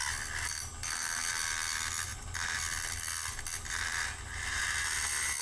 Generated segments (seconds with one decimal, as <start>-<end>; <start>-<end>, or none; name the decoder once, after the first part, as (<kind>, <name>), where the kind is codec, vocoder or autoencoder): none